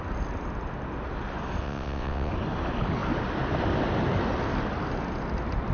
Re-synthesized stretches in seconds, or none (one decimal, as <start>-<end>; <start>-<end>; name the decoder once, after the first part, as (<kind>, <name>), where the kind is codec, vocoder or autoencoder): 1.6-2.3 (vocoder, WaveNeXt)

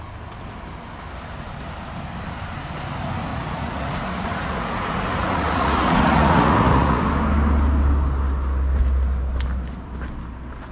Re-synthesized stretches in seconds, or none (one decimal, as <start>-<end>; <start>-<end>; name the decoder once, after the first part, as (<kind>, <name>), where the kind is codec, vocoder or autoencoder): 3.3-7.0 (vocoder, Vocos)

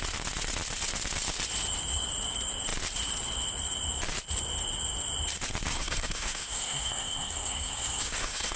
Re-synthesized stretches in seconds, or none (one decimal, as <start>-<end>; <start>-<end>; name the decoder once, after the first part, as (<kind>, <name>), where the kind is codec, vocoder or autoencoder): 5.7-8.6 (codec, SNAC)

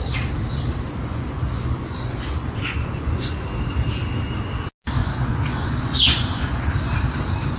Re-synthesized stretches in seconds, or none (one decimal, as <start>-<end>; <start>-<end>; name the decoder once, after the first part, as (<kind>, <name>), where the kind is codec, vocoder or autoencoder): 1.0-3.3 (vocoder, Vocos); 5.0-6.7

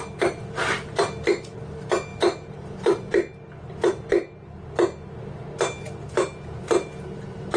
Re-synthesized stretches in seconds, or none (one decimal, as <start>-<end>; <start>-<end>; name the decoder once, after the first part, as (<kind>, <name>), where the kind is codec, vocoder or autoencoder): none

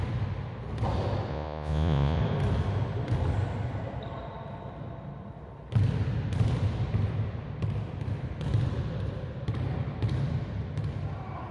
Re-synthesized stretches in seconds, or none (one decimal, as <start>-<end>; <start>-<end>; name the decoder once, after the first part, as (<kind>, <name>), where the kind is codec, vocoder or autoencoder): 1.3-2.2 (vocoder, Vocos)

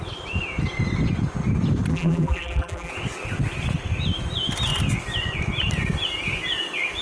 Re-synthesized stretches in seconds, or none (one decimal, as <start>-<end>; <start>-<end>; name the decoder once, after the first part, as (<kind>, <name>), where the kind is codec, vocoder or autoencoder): 1.9-2.9 (vocoder, BigVGAN v2)